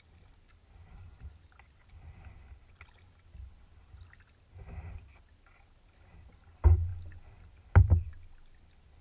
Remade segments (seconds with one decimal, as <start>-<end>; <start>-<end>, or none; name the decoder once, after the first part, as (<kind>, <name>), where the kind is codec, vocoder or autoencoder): none